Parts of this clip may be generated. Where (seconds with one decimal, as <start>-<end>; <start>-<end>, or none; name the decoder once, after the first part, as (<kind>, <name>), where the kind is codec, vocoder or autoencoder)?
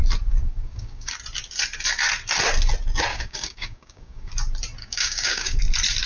0.5-1.1 (codec, DAC); 3.1-4.3; 4.8-5.6